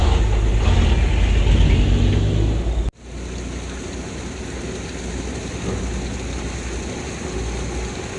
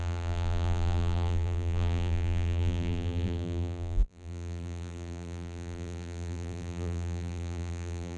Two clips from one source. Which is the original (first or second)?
first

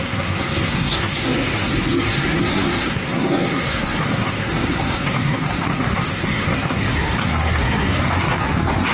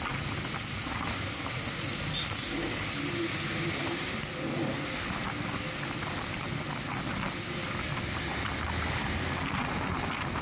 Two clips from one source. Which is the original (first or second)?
second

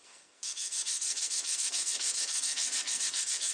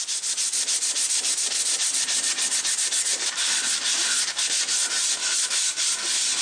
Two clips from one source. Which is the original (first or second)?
second